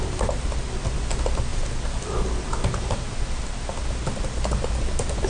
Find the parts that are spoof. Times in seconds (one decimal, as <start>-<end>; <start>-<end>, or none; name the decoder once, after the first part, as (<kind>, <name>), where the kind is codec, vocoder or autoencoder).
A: none

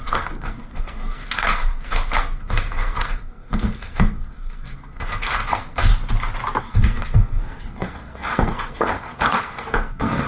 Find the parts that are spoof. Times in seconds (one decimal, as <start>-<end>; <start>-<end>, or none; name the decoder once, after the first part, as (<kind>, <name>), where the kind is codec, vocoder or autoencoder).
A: 0.0-5.9 (codec, SNAC); 6.6-10.3

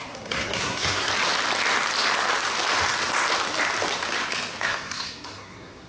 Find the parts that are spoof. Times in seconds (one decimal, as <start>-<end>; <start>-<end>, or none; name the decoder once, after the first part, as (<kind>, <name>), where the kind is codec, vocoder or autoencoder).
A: 0.0-1.1 (codec, SNAC); 4.6-5.9

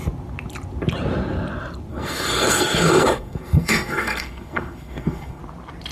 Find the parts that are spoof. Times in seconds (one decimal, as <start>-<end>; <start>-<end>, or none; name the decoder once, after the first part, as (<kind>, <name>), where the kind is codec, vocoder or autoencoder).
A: 1.9-5.4 (codec, SNAC)

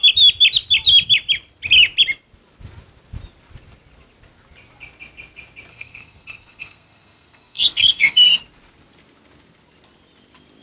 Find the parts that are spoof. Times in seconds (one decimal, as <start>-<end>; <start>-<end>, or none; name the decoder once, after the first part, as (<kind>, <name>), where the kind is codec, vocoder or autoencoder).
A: 5.7-8.4 (codec, SNAC)

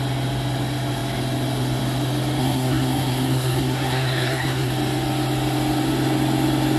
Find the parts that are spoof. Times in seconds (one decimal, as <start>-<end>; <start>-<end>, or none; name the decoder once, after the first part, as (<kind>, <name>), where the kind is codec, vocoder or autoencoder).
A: 2.4-4.7 (codec, SNAC)

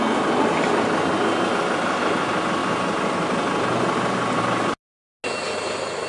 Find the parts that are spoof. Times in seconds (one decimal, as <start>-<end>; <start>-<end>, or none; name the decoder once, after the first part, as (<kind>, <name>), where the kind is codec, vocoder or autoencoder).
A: none